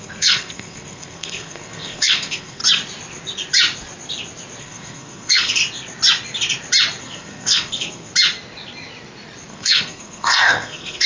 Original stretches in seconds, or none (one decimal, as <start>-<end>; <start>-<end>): 2.6-4.6; 5.6-7.0; 8.1-9.5